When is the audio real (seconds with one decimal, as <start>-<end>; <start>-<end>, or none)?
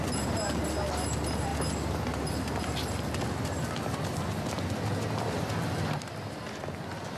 0.0-7.2